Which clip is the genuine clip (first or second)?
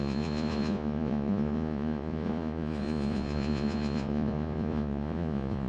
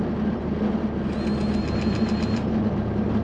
second